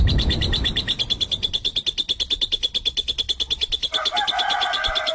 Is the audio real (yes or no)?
yes